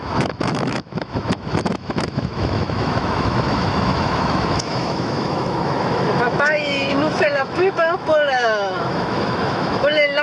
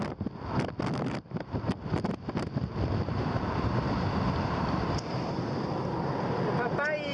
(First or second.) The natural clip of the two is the second